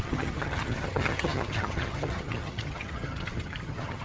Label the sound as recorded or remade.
remade